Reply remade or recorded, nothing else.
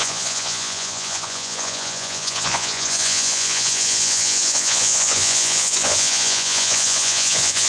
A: remade